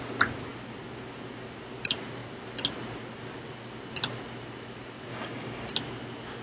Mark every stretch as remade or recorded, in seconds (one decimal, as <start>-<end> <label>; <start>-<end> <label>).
0.0-5.1 recorded; 5.1-5.7 remade; 5.7-6.4 recorded